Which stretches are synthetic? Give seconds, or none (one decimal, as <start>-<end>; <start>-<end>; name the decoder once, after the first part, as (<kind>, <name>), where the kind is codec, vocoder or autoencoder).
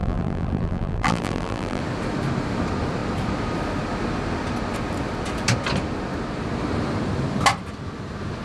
0.0-1.8 (vocoder, BigVGAN v2)